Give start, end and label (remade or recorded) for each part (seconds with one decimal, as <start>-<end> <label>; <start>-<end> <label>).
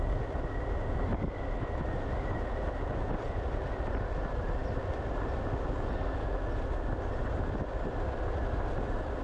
0.0-1.1 remade; 1.1-3.1 recorded; 3.1-4.6 remade; 4.6-7.1 recorded; 7.1-9.2 remade